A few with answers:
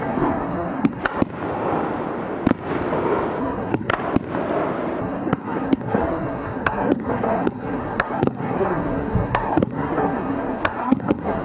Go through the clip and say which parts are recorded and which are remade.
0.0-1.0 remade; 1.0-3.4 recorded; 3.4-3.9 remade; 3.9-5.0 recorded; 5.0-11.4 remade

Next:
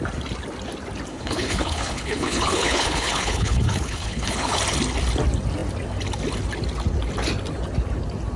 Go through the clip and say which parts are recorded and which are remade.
0.0-1.1 recorded; 1.1-4.6 remade; 4.6-8.4 recorded